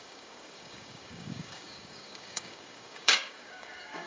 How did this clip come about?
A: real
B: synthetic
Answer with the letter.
B